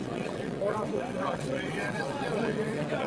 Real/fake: fake